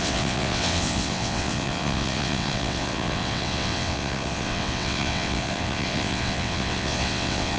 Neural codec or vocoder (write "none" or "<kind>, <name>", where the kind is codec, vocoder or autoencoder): vocoder, WaveNeXt